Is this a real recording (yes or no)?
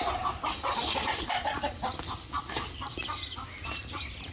yes